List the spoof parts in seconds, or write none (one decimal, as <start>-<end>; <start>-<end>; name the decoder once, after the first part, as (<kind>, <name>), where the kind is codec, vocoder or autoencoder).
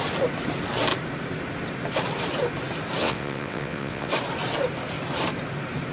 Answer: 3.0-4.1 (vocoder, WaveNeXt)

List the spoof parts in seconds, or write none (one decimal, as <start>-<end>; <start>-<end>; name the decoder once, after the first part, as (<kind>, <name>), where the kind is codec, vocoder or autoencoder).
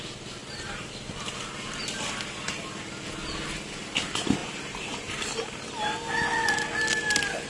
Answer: 0.4-0.9 (vocoder, BigVGAN v2); 4.4-5.2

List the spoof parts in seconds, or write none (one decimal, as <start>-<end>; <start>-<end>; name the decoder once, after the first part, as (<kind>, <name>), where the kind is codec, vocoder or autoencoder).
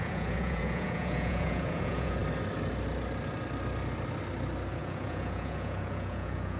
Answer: 0.0-2.2 (vocoder, Vocos); 4.8-6.6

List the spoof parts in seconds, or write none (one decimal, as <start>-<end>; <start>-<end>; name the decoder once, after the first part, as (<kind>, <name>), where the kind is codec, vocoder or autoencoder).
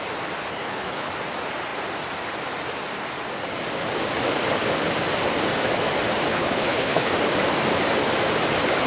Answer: 0.5-1.1 (codec, HILCodec); 6.3-7.1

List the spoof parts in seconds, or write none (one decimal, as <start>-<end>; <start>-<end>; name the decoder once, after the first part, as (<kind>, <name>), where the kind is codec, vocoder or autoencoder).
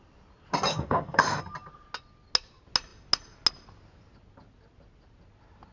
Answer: 0.7-1.4 (autoencoder, DAC-VAE)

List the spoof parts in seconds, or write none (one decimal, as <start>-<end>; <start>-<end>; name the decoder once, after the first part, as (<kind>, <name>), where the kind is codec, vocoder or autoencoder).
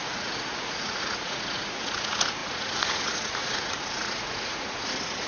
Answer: 0.0-5.3 (vocoder, Vocos)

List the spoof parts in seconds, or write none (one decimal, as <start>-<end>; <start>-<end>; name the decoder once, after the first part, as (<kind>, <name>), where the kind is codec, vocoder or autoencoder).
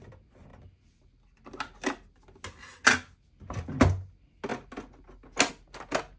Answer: none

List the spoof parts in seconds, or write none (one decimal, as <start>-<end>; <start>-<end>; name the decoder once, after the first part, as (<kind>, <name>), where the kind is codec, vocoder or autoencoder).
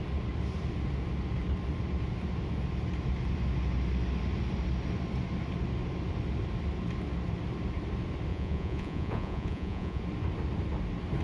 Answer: 8.3-10.0 (vocoder, Vocos)